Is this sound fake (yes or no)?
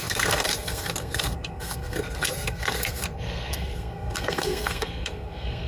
yes